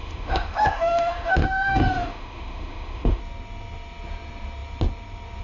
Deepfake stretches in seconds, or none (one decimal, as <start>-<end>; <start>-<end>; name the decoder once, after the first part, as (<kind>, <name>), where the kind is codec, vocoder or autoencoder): 0.0-3.2 (autoencoder, DAC-VAE)